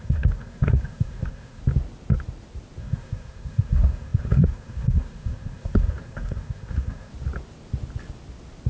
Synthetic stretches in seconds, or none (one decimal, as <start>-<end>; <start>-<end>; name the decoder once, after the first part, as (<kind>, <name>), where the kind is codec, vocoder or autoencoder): 0.0-1.6 (codec, SNAC); 2.8-7.1